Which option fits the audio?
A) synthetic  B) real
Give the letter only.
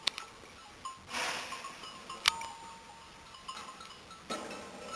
B